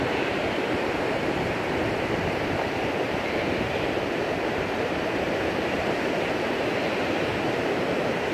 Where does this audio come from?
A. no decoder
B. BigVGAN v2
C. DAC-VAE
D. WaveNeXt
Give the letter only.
B